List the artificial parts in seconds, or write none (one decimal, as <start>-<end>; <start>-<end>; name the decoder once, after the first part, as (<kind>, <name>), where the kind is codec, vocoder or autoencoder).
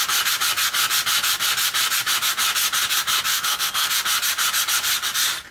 3.3-3.9 (codec, SNAC)